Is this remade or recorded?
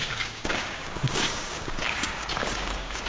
remade